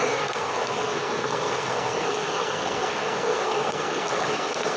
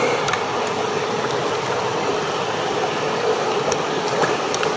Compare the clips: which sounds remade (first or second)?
first